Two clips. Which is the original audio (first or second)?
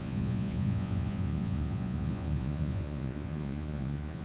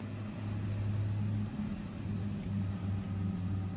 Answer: second